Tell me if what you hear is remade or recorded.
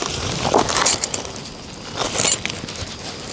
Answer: recorded